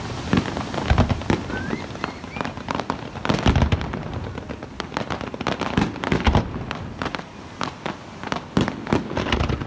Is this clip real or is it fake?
real